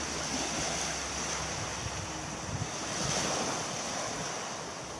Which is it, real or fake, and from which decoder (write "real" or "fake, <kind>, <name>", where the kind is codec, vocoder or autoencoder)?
real